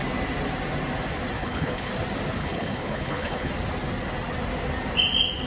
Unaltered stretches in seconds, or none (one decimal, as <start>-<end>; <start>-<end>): 0.0-1.4; 1.9-2.4; 3.5-5.5